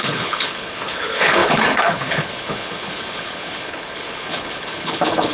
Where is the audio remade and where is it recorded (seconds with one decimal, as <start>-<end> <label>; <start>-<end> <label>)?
0.0-5.3 remade